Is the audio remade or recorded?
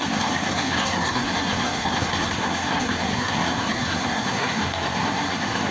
remade